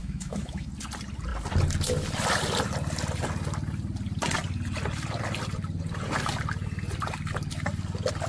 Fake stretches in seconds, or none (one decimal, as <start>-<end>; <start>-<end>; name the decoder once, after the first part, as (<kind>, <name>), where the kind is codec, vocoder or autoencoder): 0.0-0.7 (autoencoder, DAC-VAE)